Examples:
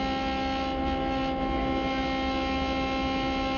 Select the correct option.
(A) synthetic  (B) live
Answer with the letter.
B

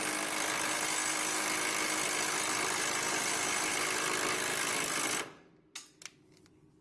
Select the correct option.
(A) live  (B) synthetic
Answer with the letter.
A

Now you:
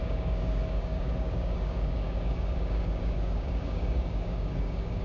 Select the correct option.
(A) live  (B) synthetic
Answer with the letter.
B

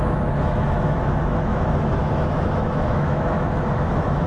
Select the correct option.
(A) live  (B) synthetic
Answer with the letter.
B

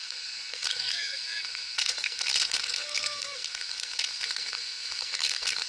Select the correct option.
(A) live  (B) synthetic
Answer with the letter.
B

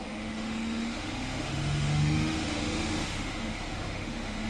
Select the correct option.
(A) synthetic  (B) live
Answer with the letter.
A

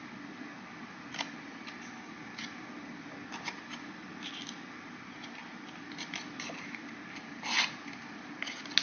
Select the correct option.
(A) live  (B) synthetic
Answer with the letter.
A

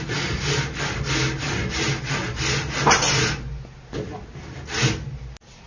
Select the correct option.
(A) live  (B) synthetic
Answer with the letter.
A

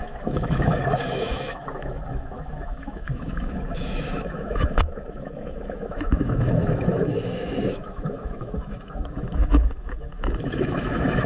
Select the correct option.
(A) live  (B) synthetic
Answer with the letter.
B